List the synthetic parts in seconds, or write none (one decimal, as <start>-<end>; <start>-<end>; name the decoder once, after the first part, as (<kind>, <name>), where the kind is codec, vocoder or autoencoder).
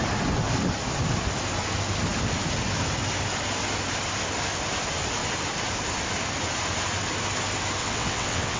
7.8-8.6 (vocoder, WaveNeXt)